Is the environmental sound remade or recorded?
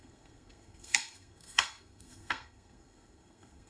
remade